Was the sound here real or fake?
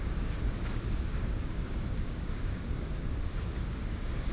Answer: fake